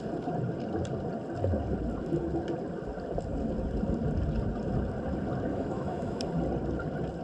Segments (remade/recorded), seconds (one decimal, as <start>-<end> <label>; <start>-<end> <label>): 0.0-5.5 recorded; 5.5-6.2 remade; 6.2-7.2 recorded